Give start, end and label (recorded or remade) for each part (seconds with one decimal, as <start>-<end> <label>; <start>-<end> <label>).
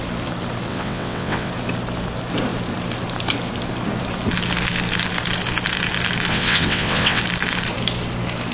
0.0-0.7 recorded; 0.7-1.5 remade; 1.5-6.3 recorded; 6.3-7.2 remade; 7.2-8.5 recorded